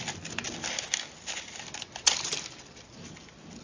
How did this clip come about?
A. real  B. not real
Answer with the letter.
A